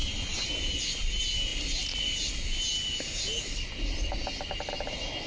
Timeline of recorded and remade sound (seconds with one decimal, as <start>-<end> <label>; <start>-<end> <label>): 0.0-5.3 recorded